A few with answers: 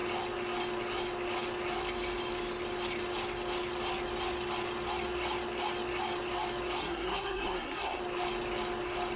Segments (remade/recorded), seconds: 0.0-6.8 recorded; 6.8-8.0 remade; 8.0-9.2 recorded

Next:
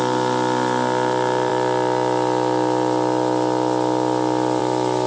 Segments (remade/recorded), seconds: 0.0-5.1 recorded